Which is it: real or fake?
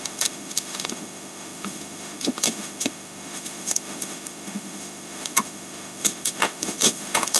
fake